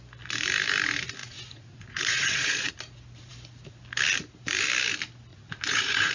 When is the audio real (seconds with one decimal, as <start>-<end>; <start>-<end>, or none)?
0.0-1.2; 2.7-5.3